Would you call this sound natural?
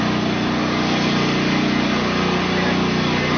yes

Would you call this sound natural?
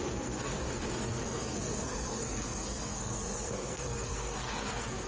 no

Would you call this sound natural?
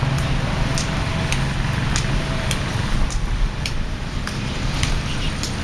yes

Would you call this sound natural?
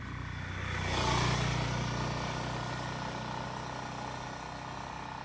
yes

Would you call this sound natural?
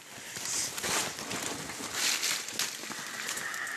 yes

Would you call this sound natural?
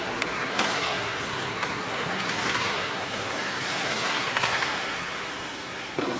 no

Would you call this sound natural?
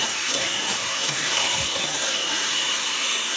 no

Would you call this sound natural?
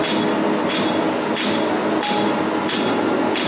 yes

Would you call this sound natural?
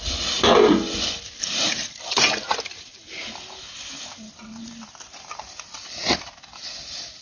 yes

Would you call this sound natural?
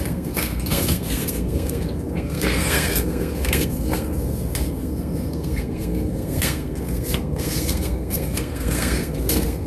no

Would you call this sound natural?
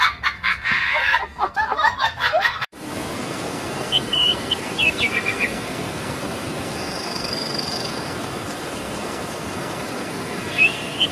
no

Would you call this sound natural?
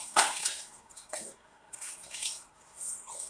no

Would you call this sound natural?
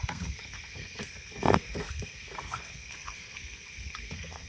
no